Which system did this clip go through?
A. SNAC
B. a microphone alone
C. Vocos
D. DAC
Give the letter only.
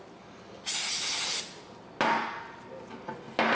B